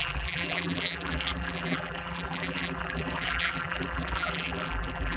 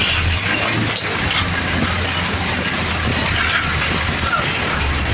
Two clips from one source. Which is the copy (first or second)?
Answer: first